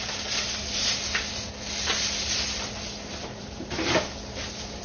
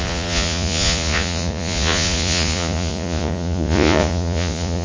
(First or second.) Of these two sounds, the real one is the first